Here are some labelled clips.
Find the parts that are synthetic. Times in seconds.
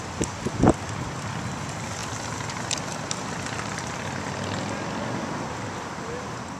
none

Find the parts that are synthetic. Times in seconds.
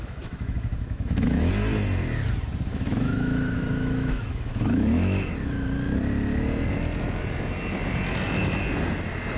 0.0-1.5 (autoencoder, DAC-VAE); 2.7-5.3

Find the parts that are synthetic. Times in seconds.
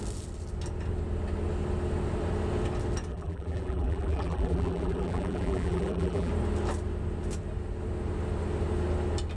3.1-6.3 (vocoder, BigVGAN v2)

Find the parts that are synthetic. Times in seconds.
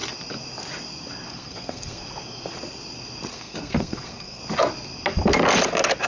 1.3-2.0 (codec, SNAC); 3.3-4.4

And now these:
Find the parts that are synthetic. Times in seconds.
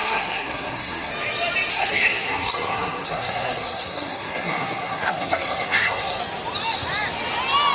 0.0-1.1 (codec, SNAC); 1.7-6.2